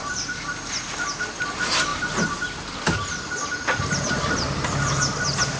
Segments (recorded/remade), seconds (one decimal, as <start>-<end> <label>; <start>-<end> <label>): 0.0-5.6 recorded